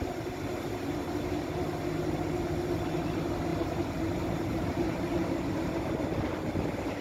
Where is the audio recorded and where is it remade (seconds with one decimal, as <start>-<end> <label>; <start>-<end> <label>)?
0.0-3.5 recorded; 3.5-5.3 remade; 5.3-7.0 recorded